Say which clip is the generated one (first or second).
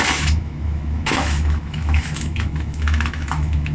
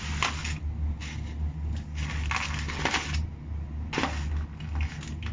first